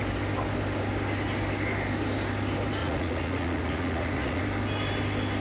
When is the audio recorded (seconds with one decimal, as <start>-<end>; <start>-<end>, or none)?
0.0-2.8; 4.4-5.4